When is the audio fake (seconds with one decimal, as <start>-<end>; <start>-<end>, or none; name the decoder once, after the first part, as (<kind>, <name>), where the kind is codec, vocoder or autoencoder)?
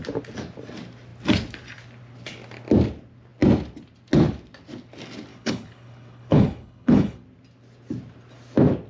5.3-7.2 (codec, HILCodec)